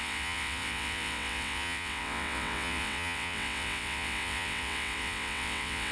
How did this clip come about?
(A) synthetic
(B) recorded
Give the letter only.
A